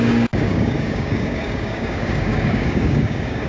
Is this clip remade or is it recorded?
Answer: remade